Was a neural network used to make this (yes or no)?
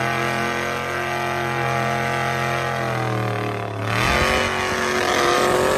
no